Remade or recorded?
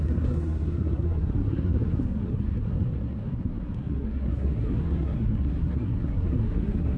remade